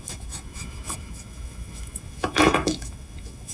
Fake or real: fake